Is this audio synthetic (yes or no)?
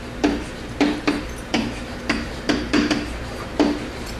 yes